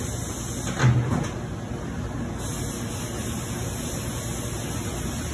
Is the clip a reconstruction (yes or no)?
no